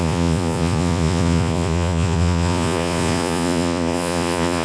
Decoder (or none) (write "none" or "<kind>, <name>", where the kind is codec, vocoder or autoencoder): vocoder, Vocos